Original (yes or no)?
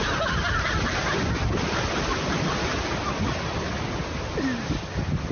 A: yes